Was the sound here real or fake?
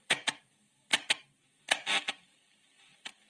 fake